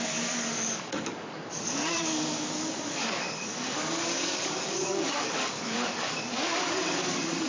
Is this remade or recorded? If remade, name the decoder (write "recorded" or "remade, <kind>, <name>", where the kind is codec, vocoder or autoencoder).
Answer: remade, codec, DAC